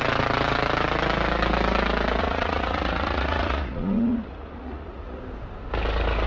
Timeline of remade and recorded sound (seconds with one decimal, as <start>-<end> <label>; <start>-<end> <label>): 0.0-2.2 recorded; 2.2-5.2 remade; 5.2-6.3 recorded